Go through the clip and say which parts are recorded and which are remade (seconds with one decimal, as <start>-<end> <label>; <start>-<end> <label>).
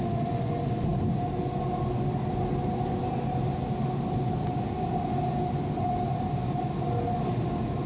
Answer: 0.0-7.9 recorded